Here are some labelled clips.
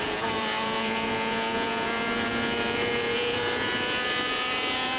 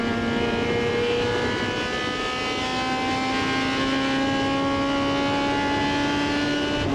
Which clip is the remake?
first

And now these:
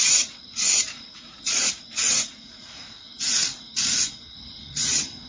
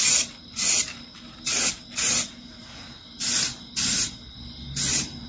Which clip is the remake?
first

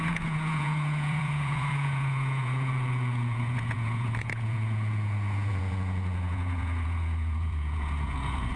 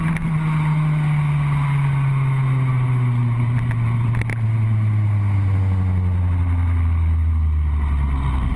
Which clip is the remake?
first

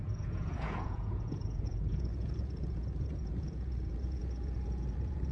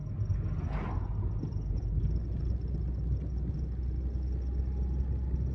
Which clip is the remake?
first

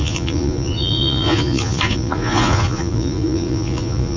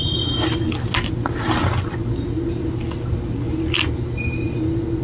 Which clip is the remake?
first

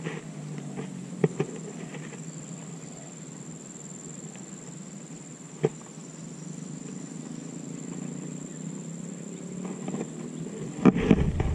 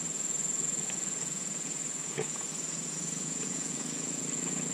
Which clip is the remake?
second